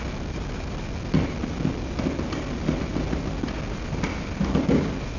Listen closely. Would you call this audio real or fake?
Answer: real